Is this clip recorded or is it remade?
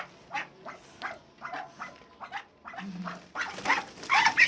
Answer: recorded